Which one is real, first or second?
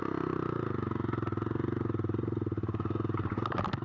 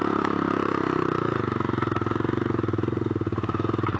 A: first